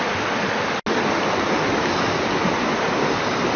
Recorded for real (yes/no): yes